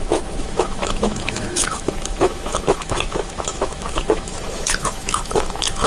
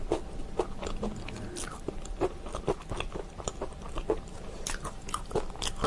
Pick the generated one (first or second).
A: first